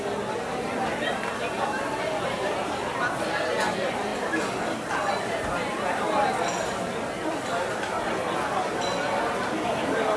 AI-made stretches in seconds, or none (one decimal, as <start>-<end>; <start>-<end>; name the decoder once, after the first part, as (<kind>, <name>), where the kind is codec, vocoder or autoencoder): none